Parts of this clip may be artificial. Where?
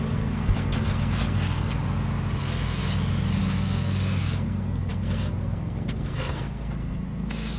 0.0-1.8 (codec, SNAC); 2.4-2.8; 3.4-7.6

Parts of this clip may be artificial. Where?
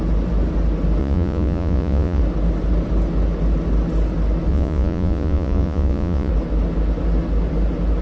1.0-2.2 (vocoder, Vocos); 4.5-6.3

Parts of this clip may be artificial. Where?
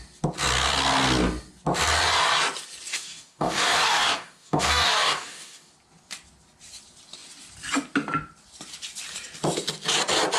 2.9-5.7 (codec, DAC)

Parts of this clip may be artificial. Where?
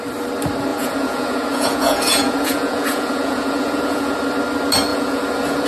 0.7-4.1 (vocoder, Vocos); 4.9-5.7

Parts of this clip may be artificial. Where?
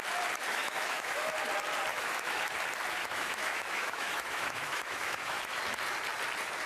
0.5-1.3 (autoencoder, DAC-VAE); 1.9-2.5; 3.0-5.6